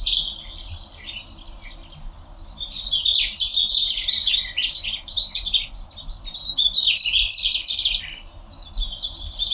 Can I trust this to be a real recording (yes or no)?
yes